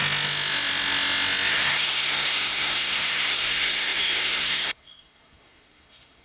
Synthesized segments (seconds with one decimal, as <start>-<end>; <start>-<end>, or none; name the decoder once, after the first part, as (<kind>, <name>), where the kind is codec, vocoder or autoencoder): 1.5-6.2 (codec, SNAC)